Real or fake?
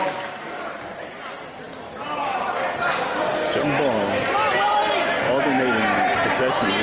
real